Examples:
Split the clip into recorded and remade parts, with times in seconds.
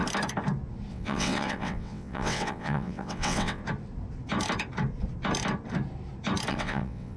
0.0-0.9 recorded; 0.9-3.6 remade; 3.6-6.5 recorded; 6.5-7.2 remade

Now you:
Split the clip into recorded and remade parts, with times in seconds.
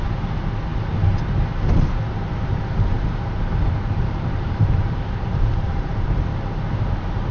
0.0-0.7 recorded; 0.7-1.4 remade; 1.4-2.3 recorded; 2.3-6.3 remade; 6.3-7.3 recorded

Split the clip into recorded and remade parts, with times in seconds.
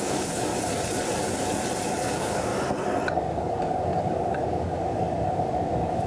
0.0-0.5 remade; 0.5-2.0 recorded; 2.0-2.5 remade; 2.5-3.2 recorded; 3.2-6.1 remade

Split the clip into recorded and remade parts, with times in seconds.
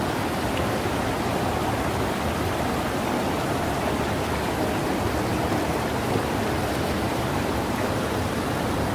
0.0-8.9 recorded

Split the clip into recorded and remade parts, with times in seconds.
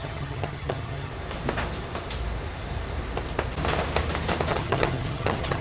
0.0-1.1 remade; 1.1-4.5 recorded; 4.5-5.6 remade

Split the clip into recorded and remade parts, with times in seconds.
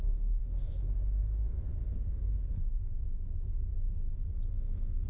0.0-1.7 remade; 1.7-4.5 recorded; 4.5-5.1 remade